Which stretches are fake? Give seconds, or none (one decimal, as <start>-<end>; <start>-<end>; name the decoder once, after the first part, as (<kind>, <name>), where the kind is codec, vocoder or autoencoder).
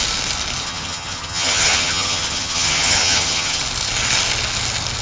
0.6-3.6 (vocoder, HiFi-GAN)